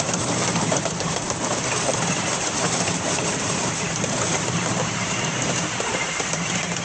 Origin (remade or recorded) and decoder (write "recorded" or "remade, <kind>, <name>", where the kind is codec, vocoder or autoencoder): remade, vocoder, BigVGAN v2